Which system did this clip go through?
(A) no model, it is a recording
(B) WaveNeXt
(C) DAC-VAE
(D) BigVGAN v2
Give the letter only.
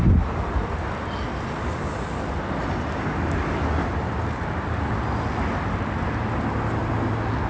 A